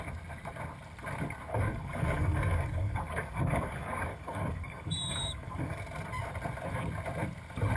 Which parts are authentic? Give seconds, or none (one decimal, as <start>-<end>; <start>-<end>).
0.0-1.5; 5.8-7.8